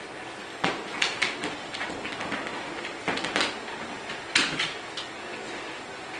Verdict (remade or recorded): recorded